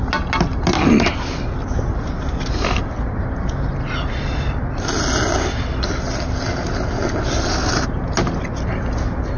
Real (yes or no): yes